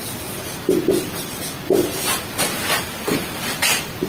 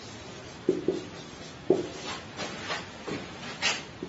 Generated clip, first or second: first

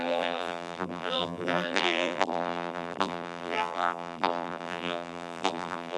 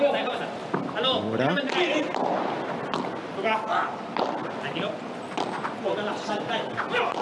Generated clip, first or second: first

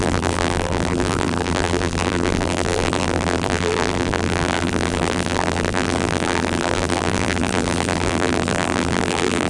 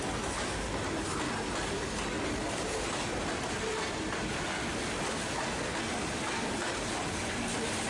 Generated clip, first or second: first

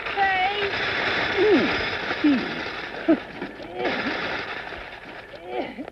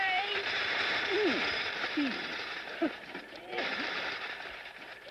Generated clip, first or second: second